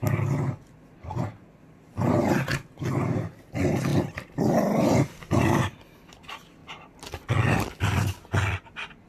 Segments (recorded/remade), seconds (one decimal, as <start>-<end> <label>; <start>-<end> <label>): 0.0-3.9 recorded; 3.9-6.1 remade; 6.1-6.6 recorded; 6.6-7.7 remade; 7.7-9.1 recorded